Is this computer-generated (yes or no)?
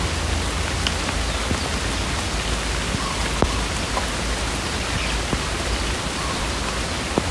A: no